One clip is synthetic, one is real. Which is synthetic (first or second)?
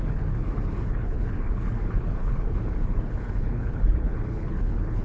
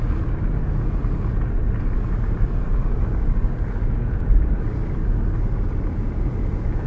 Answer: first